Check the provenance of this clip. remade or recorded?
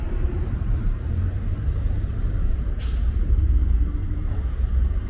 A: remade